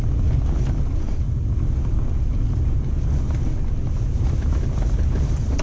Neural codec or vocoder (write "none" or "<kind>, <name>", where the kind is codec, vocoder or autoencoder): none